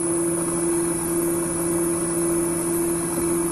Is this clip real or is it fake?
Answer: real